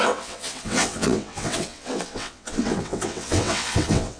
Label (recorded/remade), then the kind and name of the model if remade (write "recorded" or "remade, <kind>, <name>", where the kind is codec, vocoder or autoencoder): remade, vocoder, WaveNeXt